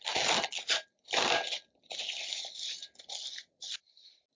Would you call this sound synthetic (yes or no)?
no